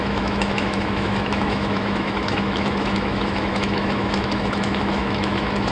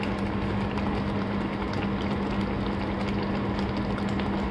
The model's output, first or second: first